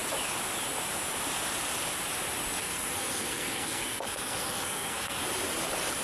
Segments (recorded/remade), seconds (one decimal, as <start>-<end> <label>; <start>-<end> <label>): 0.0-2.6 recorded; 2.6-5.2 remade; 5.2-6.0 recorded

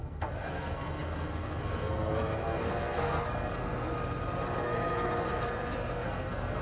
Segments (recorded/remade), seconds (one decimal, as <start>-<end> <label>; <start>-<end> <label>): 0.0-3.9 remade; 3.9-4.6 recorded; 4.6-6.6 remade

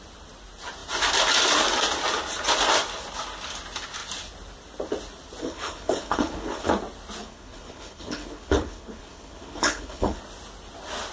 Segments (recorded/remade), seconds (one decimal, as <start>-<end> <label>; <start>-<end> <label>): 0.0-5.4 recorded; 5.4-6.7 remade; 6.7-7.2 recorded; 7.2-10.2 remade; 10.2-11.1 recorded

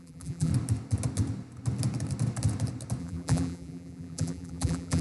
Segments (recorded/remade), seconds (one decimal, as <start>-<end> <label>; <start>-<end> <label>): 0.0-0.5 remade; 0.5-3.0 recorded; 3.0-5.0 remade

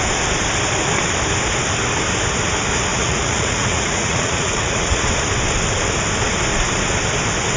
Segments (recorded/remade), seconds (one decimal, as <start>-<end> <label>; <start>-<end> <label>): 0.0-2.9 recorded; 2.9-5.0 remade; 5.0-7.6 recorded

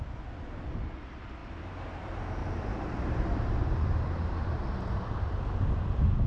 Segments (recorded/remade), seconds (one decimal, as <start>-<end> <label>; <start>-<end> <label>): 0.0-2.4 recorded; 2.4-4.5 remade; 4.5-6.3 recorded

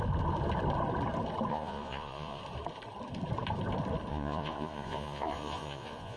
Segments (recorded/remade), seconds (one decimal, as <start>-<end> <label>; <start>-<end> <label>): 0.0-1.5 recorded; 1.5-2.4 remade; 2.4-4.1 recorded; 4.1-6.2 remade

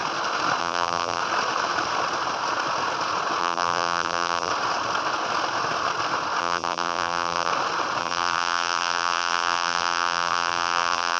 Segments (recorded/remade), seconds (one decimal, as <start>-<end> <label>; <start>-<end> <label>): 0.0-0.6 recorded; 0.6-1.2 remade; 1.2-3.4 recorded; 3.4-4.5 remade; 4.5-6.4 recorded; 6.4-7.5 remade; 7.5-8.0 recorded; 8.0-11.2 remade